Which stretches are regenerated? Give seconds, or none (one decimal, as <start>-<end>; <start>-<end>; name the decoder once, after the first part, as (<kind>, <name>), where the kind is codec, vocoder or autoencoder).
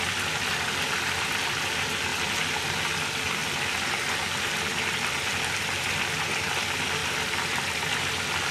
3.4-4.2 (vocoder, BigVGAN v2); 7.0-7.8